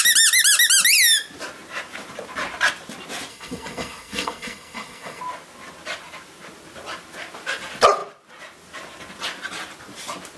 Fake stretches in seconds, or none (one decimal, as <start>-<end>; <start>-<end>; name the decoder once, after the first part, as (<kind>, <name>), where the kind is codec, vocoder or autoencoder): 3.3-5.2 (codec, SNAC)